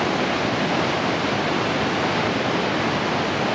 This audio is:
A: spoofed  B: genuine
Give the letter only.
B